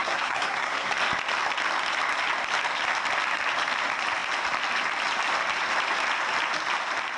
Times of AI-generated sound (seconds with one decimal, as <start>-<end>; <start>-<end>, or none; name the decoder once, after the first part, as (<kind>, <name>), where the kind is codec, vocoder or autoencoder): 0.0-0.9 (codec, SNAC)

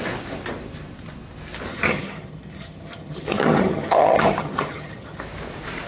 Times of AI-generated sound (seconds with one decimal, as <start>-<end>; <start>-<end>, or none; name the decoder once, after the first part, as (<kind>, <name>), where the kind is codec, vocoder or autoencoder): 1.7-5.2 (vocoder, HiFi-GAN)